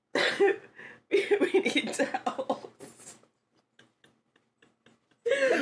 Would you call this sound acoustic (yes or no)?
yes